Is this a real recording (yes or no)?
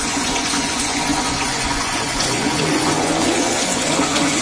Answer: no